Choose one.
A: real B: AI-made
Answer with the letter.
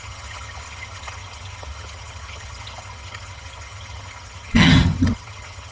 B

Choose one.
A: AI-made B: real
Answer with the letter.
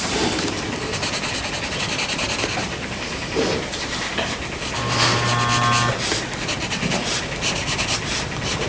B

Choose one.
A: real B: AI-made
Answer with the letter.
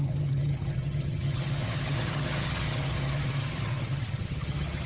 B